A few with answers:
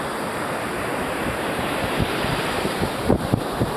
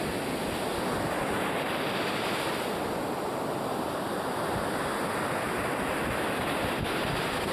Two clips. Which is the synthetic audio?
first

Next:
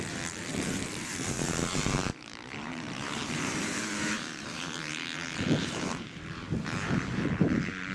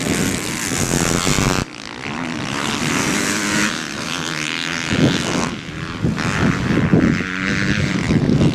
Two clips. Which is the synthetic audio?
first